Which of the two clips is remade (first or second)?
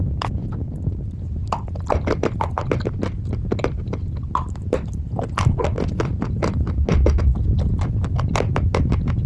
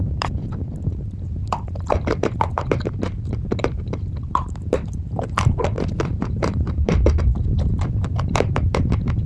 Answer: second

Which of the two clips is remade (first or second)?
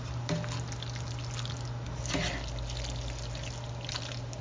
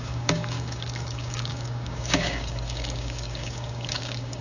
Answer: second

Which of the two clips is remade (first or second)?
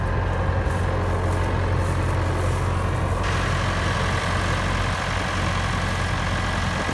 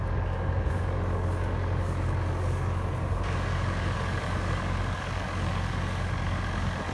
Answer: second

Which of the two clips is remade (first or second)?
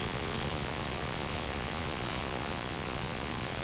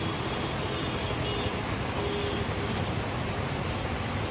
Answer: first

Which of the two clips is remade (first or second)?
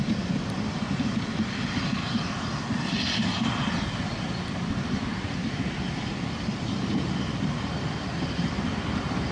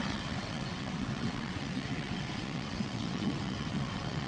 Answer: second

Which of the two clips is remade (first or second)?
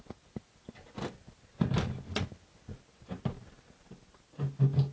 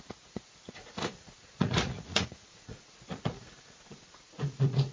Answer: second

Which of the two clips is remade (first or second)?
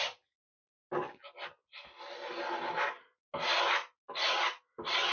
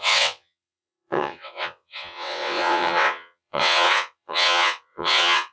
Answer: second